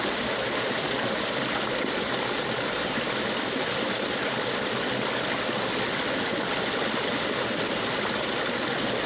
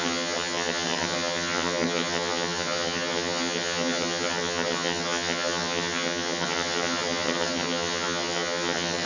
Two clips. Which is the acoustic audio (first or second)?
first